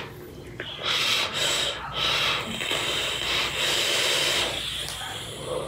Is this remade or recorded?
recorded